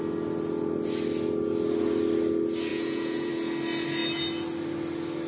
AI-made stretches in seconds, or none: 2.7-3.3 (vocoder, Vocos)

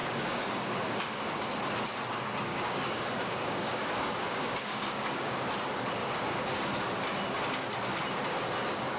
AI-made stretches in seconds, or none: 0.0-1.2 (codec, DAC); 2.5-5.5; 6.0-6.7

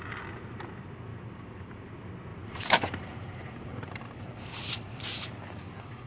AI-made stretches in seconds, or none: 1.1-1.9 (vocoder, BigVGAN v2); 2.3-6.1

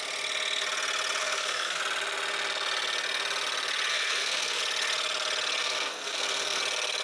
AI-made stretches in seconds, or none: 1.2-1.8 (codec, SNAC); 3.9-4.6; 5.6-6.6

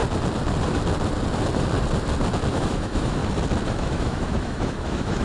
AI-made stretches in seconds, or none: 2.5-3.2 (autoencoder, DAC-VAE); 3.7-5.2